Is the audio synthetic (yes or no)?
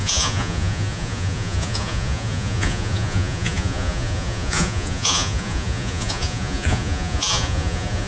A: yes